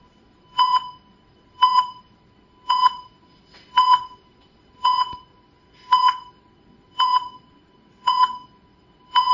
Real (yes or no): no